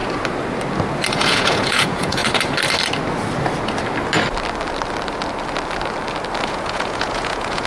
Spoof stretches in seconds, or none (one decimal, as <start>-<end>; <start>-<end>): 1.1-2.2; 6.4-7.7